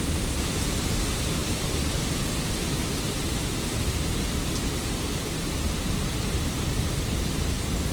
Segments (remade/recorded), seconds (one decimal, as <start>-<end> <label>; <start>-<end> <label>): 0.0-7.9 recorded